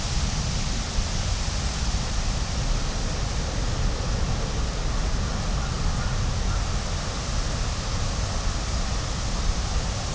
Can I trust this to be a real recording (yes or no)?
yes